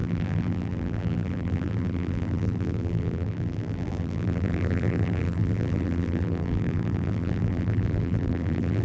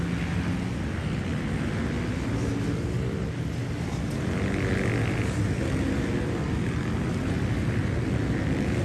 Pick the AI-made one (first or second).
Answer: first